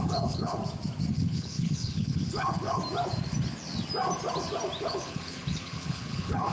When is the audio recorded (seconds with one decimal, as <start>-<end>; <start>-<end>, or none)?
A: 0.6-1.1; 2.8-4.8